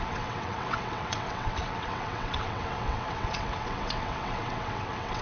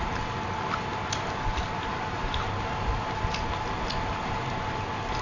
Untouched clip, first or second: second